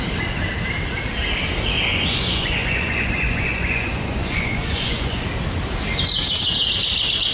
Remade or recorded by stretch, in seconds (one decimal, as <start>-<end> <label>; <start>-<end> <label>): 0.0-1.9 recorded; 1.9-5.2 remade; 5.2-7.3 recorded